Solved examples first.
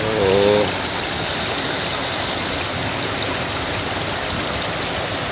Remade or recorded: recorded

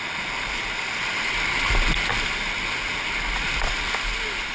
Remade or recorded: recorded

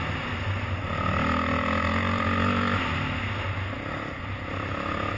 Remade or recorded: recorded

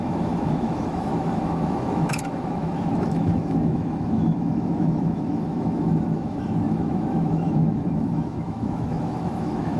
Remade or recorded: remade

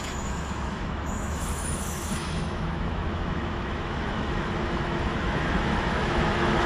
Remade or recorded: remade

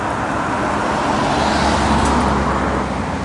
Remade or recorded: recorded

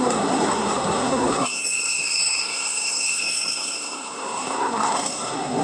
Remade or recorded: remade